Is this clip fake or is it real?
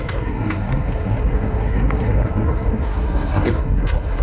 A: fake